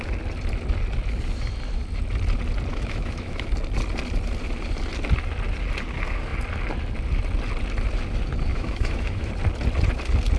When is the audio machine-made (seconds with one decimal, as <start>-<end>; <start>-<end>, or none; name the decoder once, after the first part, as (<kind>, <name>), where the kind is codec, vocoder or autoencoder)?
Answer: 2.7-3.5 (autoencoder, DAC-VAE); 8.5-9.3